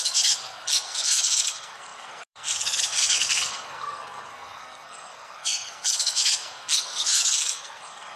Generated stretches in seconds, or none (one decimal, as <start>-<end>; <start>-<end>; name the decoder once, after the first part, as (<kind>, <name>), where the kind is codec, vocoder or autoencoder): 0.0-8.2 (codec, SNAC)